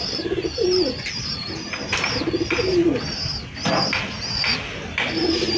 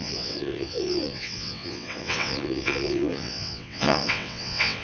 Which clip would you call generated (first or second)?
second